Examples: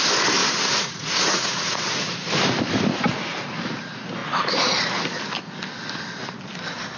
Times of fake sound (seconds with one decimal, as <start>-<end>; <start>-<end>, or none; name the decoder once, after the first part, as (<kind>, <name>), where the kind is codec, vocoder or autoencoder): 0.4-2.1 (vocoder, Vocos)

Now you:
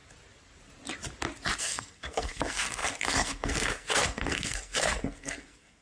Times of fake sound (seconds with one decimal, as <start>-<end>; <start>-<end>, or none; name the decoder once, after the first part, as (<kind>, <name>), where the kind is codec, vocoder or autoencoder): 1.6-5.8 (codec, SNAC)

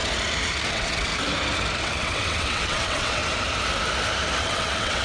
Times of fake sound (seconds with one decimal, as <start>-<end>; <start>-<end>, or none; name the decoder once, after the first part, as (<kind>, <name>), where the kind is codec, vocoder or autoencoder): 0.7-1.1 (vocoder, WaveNeXt); 1.8-3.2; 4.4-5.0

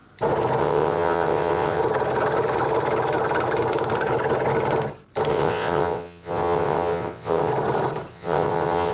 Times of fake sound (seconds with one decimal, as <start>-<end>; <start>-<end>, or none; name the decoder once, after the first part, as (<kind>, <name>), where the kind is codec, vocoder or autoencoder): 0.6-1.8 (vocoder, WaveNeXt); 5.3-7.5; 8.1-8.9

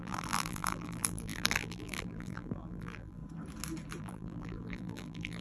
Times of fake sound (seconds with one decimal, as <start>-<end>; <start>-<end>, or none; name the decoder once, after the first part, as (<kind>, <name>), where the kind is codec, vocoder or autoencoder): 0.0-3.2 (vocoder, BigVGAN v2); 4.0-5.4

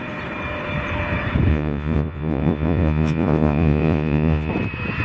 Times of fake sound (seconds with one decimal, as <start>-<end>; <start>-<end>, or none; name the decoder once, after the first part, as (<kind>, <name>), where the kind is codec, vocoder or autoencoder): 1.5-4.5 (vocoder, Vocos)